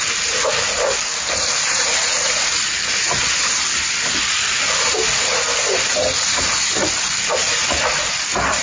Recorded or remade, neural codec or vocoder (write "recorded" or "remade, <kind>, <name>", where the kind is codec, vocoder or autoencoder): recorded